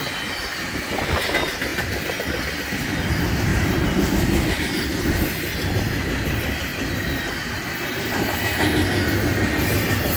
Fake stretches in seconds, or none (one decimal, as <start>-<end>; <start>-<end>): 3.5-4.6; 6.7-7.2